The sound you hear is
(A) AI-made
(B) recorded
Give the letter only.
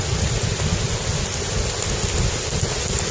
B